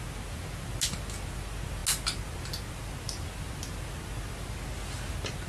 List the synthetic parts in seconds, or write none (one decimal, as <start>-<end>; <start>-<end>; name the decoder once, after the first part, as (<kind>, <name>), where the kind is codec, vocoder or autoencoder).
none